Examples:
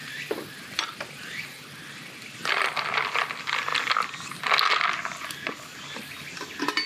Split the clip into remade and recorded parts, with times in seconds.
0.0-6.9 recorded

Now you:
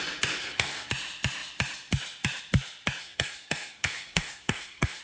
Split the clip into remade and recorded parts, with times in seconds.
0.0-0.4 recorded; 0.4-0.9 remade; 0.9-3.0 recorded; 3.0-5.0 remade

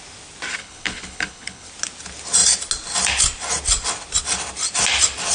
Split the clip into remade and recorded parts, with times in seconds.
0.0-0.6 recorded; 0.6-1.7 remade; 1.7-5.3 recorded

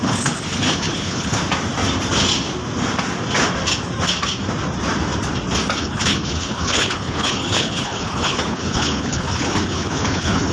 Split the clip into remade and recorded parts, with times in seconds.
0.0-1.4 remade; 1.4-5.8 recorded; 5.8-10.5 remade

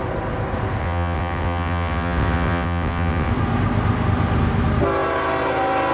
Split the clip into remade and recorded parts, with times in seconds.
0.0-0.8 recorded; 0.8-3.3 remade; 3.3-5.9 recorded